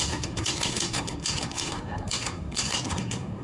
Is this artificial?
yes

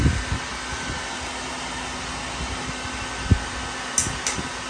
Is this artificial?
no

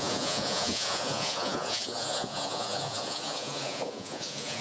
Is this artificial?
yes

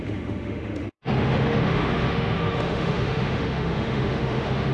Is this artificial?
yes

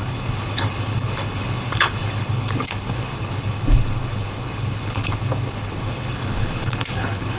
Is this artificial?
yes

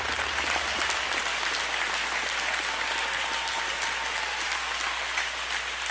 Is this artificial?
no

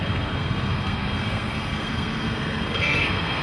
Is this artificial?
yes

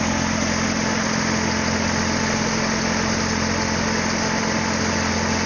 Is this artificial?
no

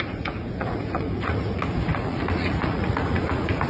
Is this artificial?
yes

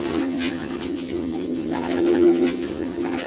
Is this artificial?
yes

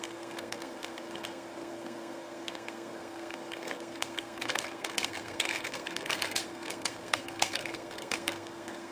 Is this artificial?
yes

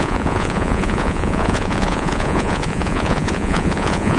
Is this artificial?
yes